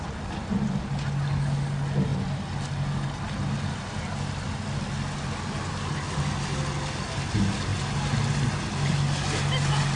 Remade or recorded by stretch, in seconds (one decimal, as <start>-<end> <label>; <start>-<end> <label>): 0.0-10.0 recorded